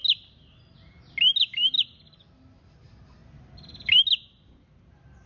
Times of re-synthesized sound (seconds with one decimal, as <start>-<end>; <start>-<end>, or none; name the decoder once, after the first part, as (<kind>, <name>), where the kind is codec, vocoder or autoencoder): none